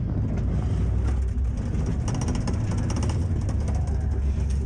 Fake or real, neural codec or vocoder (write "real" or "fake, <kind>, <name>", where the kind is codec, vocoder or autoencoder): real